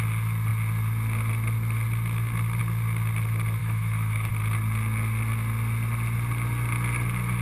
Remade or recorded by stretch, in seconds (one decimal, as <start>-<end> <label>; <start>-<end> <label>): 0.0-3.6 recorded; 3.6-4.3 remade; 4.3-7.4 recorded